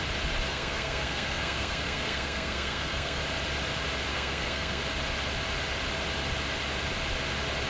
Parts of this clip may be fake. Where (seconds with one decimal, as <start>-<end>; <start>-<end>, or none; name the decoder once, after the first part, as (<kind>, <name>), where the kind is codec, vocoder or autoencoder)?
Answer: 0.5-3.2 (codec, SNAC); 4.1-4.8